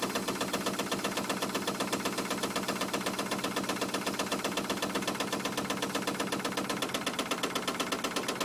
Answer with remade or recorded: recorded